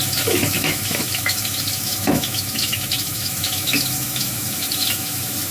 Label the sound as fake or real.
fake